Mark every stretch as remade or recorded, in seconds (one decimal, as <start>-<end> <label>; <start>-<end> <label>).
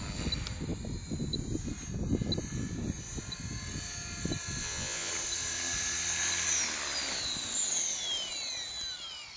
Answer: 0.0-4.6 recorded; 4.6-5.1 remade; 5.1-9.4 recorded